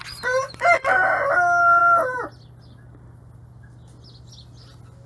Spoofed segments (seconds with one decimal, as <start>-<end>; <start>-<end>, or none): 1.8-2.3